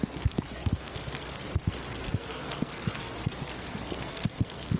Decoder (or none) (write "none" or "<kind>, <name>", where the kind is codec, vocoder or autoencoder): codec, SNAC